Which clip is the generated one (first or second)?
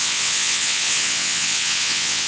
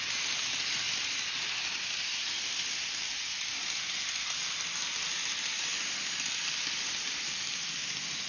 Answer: first